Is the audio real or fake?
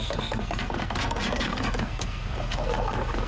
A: fake